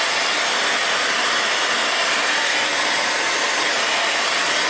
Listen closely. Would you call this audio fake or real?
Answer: real